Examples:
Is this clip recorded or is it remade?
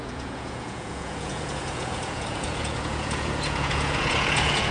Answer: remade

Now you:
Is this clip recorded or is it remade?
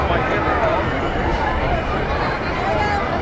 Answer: recorded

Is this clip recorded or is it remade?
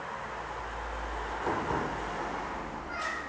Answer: recorded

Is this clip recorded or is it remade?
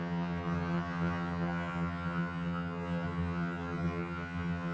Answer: remade